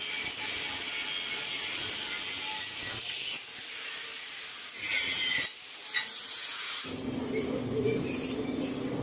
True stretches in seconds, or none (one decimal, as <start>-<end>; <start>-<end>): 0.0-6.2; 6.8-9.0

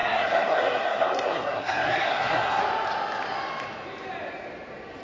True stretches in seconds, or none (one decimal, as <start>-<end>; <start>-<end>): 2.6-5.0